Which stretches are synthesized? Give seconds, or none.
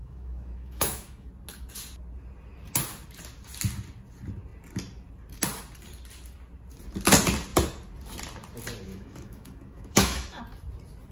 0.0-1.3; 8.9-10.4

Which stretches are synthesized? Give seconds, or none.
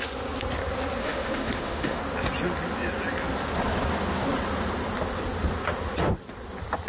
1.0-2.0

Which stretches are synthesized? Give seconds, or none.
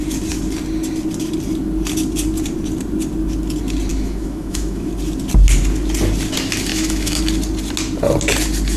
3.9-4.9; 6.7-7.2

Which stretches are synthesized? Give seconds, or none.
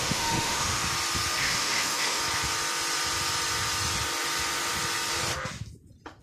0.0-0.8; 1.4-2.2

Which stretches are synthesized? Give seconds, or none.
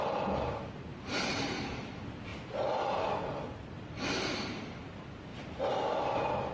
none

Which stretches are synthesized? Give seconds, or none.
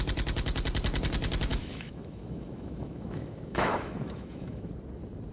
1.5-4.7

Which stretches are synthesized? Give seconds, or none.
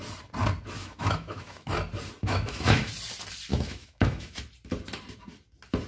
0.8-1.7; 2.2-2.9; 3.5-4.3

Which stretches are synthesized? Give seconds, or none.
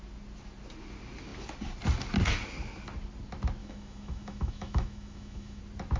3.6-5.6